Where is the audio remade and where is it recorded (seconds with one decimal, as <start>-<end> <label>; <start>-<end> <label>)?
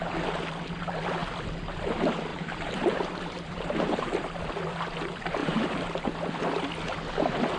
0.0-2.3 recorded; 2.3-4.4 remade; 4.4-5.4 recorded; 5.4-6.1 remade; 6.1-7.6 recorded